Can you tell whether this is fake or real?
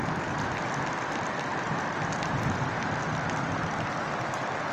real